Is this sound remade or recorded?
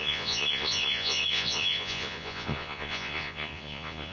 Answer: remade